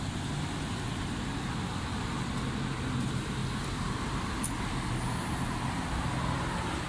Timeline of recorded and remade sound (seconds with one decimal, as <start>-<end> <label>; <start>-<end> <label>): 0.0-6.9 recorded